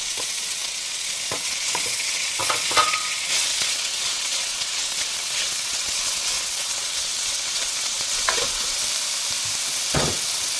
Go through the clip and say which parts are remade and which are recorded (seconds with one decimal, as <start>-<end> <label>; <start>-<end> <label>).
0.0-8.8 remade; 8.8-9.6 recorded; 9.6-10.6 remade